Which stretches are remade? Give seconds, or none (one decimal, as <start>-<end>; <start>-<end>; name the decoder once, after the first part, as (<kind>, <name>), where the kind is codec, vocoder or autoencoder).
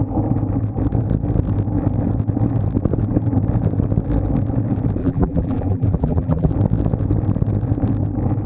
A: 5.0-6.5 (vocoder, BigVGAN v2)